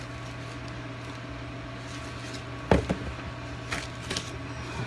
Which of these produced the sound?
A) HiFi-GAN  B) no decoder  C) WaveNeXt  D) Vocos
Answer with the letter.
B